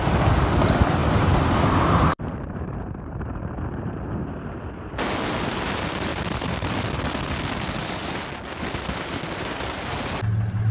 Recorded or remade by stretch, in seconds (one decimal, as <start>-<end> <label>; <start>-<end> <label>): 0.0-1.0 recorded; 1.0-4.6 remade; 4.6-6.1 recorded; 6.1-6.7 remade; 6.7-10.7 recorded

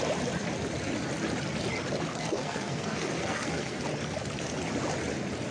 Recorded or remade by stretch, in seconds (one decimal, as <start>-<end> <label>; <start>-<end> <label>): 0.0-2.1 recorded; 2.1-3.8 remade; 3.8-5.5 recorded

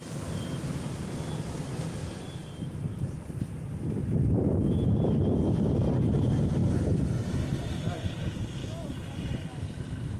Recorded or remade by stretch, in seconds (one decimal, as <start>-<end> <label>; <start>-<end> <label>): 0.0-2.0 recorded; 2.0-3.6 remade; 3.6-6.6 recorded; 6.6-7.3 remade; 7.3-10.2 recorded

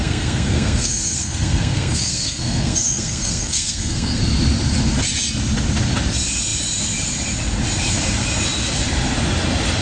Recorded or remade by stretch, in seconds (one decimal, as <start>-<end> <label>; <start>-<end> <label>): 0.0-4.2 remade; 4.2-9.8 recorded

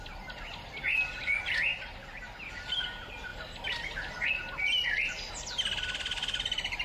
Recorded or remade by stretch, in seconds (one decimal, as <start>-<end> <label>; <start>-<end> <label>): 0.0-6.8 recorded

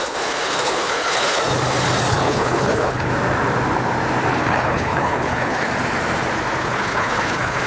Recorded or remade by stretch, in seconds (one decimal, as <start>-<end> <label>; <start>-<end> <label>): 0.0-1.4 remade; 1.4-2.1 recorded; 2.1-3.1 remade; 3.1-4.3 recorded; 4.3-5.7 remade; 5.7-6.6 recorded; 6.6-7.7 remade